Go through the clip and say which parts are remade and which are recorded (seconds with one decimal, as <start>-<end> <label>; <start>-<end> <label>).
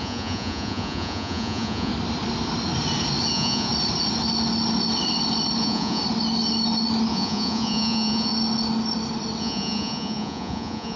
0.0-1.9 remade; 1.9-3.3 recorded; 3.3-3.7 remade; 3.7-5.6 recorded; 5.6-6.0 remade; 6.0-7.1 recorded; 7.1-8.3 remade; 8.3-9.4 recorded; 9.4-11.0 remade